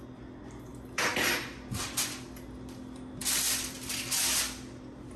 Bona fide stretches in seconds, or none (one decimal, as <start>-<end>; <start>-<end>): 0.0-0.7; 1.3-3.2; 4.2-5.2